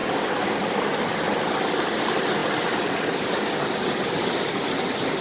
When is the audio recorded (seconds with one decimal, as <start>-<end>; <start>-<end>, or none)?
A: 1.6-2.4; 4.7-5.2